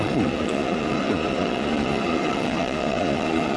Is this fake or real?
fake